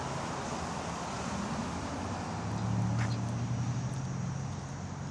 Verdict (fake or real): real